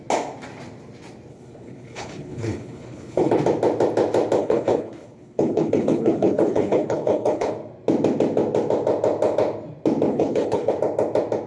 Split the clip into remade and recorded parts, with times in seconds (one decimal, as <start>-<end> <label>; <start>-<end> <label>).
0.0-1.3 recorded; 1.3-3.3 remade; 3.3-4.4 recorded; 4.4-7.5 remade; 7.5-10.1 recorded; 10.1-10.7 remade; 10.7-11.5 recorded